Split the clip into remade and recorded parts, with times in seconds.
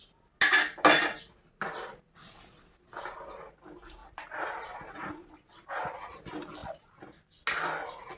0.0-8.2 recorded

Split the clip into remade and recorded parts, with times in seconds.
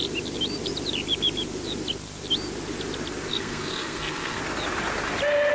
0.0-3.3 recorded; 3.3-4.4 remade; 4.4-5.5 recorded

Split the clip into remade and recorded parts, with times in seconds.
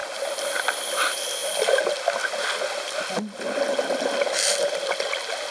0.0-5.5 recorded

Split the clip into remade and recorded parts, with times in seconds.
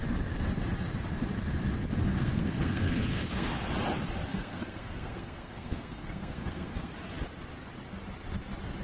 0.0-2.1 recorded; 2.1-3.6 remade; 3.6-4.3 recorded; 4.3-6.9 remade; 6.9-8.8 recorded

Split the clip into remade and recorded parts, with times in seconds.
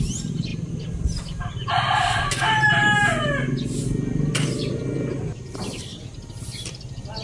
0.0-7.2 recorded